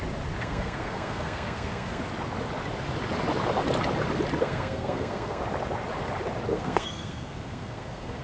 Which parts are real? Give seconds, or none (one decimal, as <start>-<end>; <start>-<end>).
0.0-0.4; 2.0-4.4; 5.4-6.5

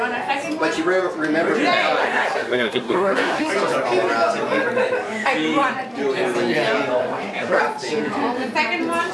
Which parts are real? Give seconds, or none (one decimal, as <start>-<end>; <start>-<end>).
0.0-2.0; 3.5-7.0; 7.6-9.1

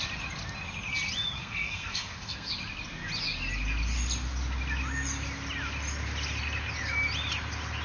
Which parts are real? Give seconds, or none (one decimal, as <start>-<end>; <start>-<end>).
0.0-1.4; 2.5-7.8

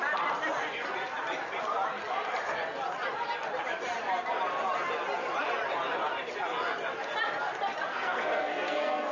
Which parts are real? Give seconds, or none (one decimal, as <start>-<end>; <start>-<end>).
0.0-7.9

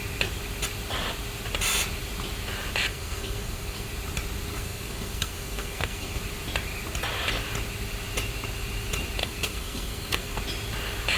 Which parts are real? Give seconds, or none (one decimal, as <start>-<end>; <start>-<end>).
0.0-2.9; 3.9-4.5; 6.2-9.2; 10.4-11.2

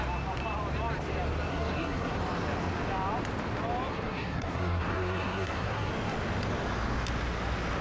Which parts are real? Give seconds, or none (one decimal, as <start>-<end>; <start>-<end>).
0.0-1.5; 2.2-3.9; 5.9-7.8

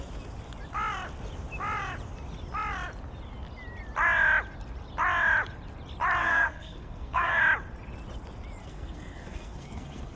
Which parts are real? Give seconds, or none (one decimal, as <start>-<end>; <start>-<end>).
0.0-6.2; 7.4-8.6

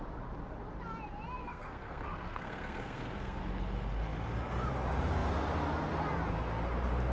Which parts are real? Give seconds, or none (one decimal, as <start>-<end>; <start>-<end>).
0.0-1.4; 3.4-7.1